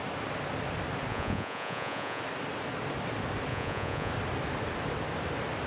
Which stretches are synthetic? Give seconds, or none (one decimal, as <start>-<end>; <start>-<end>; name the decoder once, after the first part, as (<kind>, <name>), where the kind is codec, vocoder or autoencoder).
1.1-2.2 (vocoder, Vocos); 3.5-4.1